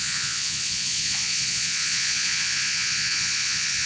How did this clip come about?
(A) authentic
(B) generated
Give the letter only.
B